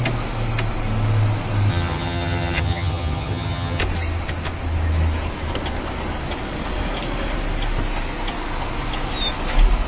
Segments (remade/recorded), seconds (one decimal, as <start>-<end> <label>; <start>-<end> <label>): 0.0-1.7 recorded; 1.7-3.8 remade; 3.8-9.9 recorded